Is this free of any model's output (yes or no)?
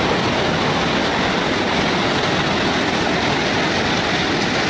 yes